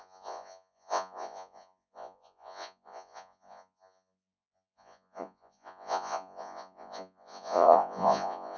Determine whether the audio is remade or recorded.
remade